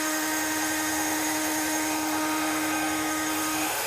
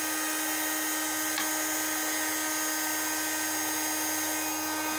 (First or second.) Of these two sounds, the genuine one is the second